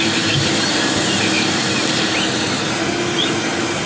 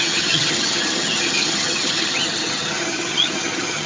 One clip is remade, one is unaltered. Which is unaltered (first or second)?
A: first